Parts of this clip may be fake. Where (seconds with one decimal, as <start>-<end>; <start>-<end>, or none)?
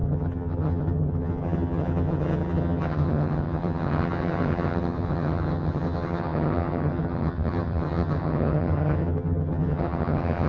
0.0-10.5